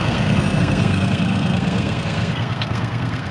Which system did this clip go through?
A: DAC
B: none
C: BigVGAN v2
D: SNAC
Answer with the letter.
D